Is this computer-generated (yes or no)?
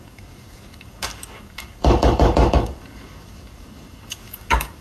yes